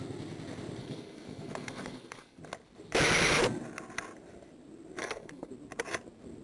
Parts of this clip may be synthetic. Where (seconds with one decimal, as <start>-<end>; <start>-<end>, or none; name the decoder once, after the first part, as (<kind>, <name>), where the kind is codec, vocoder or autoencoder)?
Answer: 0.8-2.4 (codec, SNAC); 5.0-5.5